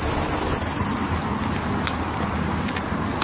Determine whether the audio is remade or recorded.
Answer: recorded